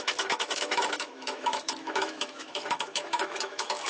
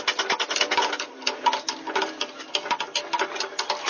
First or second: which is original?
second